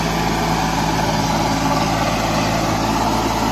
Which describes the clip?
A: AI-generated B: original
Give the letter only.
B